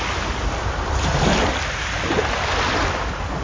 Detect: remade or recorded recorded